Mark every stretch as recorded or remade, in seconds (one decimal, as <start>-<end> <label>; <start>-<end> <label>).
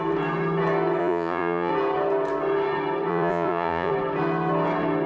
0.0-1.0 recorded; 1.0-1.7 remade; 1.7-3.1 recorded; 3.1-3.9 remade; 3.9-5.1 recorded